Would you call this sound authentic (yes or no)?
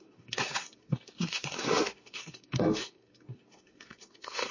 no